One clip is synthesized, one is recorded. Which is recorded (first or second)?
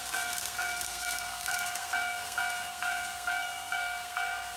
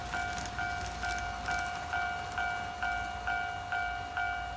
second